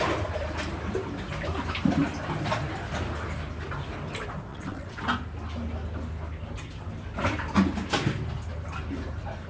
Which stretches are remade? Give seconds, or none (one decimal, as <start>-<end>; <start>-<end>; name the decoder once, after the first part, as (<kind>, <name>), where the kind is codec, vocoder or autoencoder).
4.5-5.0 (vocoder, WaveNeXt)